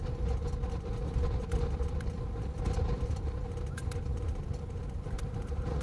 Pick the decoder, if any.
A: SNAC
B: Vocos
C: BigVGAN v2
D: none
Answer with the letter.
D